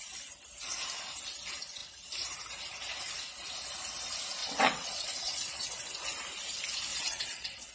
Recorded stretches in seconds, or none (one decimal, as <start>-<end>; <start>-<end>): 0.0-4.4; 5.8-6.9